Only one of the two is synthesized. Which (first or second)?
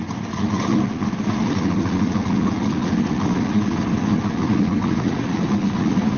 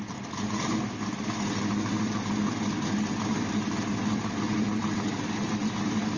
first